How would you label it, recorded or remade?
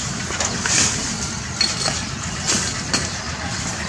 recorded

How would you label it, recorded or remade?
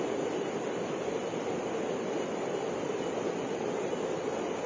recorded